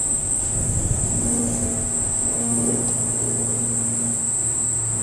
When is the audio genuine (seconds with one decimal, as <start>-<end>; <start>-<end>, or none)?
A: 2.7-4.2